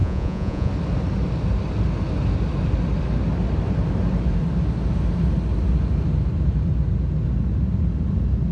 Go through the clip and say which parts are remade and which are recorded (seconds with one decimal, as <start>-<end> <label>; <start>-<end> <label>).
0.0-0.7 remade; 0.7-8.5 recorded